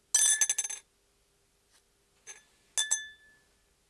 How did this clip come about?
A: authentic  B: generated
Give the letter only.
A